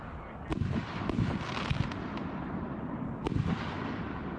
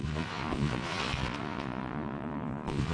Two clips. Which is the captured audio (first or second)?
first